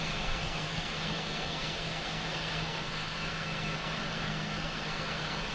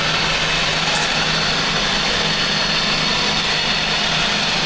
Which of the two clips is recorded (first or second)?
second